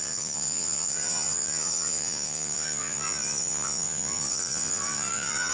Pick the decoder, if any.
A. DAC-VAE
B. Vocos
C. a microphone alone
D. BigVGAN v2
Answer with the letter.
B